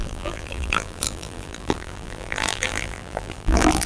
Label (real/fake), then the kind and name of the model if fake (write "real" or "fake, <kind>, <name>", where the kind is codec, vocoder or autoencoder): fake, vocoder, BigVGAN v2